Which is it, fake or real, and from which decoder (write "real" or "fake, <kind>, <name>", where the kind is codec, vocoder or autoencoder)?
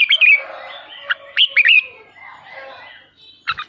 real